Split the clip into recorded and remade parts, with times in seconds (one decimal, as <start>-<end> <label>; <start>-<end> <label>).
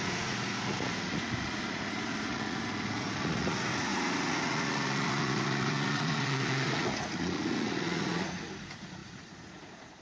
0.0-10.0 remade